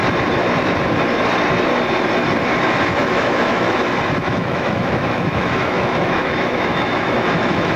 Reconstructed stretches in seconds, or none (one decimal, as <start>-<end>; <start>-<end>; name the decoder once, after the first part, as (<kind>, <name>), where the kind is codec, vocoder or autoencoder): 3.0-3.8 (autoencoder, DAC-VAE); 4.2-7.8